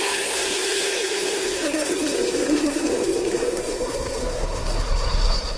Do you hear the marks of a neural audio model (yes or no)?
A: yes